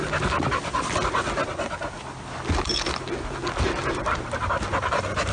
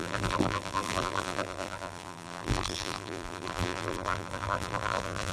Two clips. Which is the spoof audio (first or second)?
second